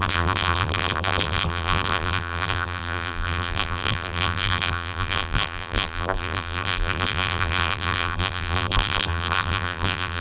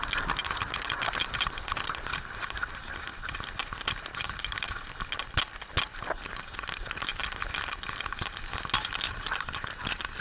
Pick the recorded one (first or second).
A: second